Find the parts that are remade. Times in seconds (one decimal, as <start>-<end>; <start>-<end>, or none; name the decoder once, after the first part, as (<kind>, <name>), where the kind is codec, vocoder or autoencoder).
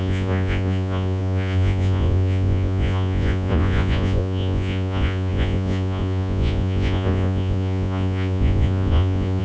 0.0-9.4 (vocoder, Vocos)